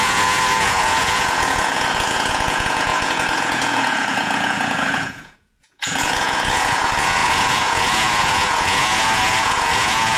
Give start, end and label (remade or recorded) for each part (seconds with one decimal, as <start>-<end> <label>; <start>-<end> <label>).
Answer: 0.0-10.2 remade